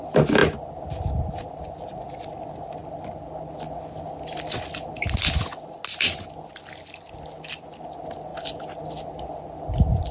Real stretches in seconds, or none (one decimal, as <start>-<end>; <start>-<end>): 0.0-10.1